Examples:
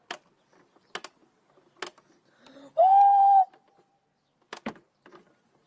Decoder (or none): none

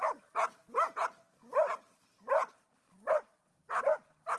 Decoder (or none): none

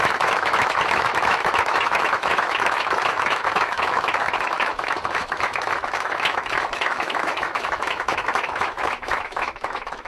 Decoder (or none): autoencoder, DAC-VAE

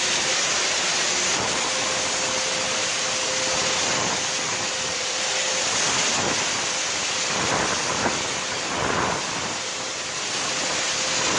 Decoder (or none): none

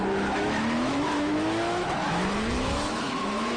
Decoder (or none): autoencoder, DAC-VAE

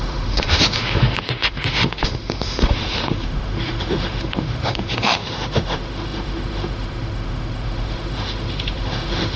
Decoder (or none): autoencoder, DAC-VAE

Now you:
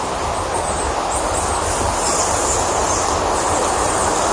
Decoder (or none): none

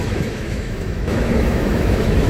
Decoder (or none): autoencoder, DAC-VAE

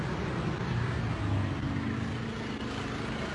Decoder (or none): none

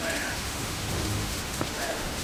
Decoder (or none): autoencoder, DAC-VAE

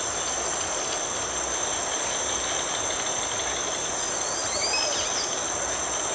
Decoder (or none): none